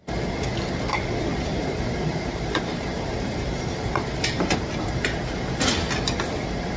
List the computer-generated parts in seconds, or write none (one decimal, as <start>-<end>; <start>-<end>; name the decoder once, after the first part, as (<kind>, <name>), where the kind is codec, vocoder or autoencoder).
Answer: 1.5-5.2 (vocoder, BigVGAN v2)